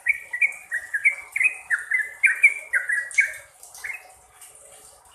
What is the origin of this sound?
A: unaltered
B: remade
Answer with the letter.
A